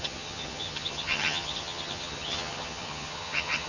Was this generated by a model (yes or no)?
yes